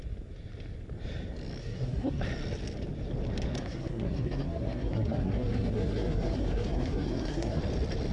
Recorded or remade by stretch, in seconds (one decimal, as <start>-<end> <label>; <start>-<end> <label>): 0.0-1.6 recorded; 1.6-2.2 remade; 2.2-3.5 recorded; 3.5-7.6 remade; 7.6-8.1 recorded